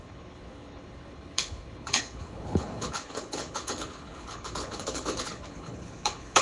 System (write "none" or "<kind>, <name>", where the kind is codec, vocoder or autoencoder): codec, HILCodec